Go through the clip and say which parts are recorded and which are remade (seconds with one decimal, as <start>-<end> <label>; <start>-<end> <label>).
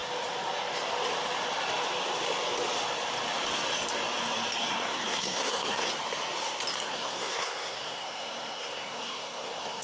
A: 0.0-4.7 recorded; 4.7-5.9 remade; 5.9-6.9 recorded; 6.9-9.8 remade